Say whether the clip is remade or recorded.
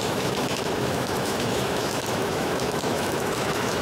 remade